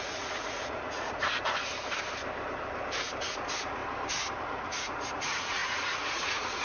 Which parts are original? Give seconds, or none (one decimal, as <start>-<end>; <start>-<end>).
1.2-3.3; 3.8-4.4